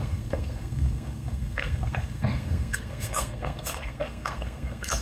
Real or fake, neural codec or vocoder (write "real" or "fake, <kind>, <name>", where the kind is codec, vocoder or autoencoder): fake, codec, SNAC